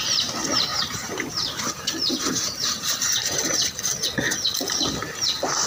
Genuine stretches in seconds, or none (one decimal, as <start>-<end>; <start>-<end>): 0.0-0.7; 3.4-5.7